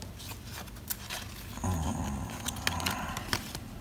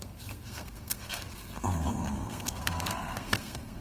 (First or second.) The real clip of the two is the first